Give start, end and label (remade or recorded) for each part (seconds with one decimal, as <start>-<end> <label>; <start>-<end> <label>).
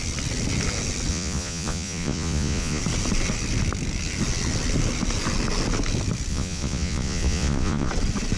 0.0-1.1 recorded; 1.1-2.8 remade; 2.8-6.3 recorded; 6.3-7.9 remade; 7.9-8.4 recorded